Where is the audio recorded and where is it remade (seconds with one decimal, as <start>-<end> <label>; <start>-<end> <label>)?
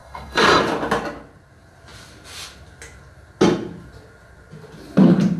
0.0-0.6 remade; 0.6-5.4 recorded